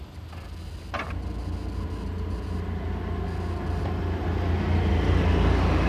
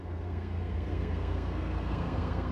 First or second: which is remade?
second